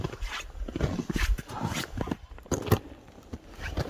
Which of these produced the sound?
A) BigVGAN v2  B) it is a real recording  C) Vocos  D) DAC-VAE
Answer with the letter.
B